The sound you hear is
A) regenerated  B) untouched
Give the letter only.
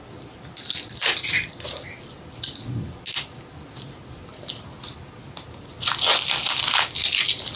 B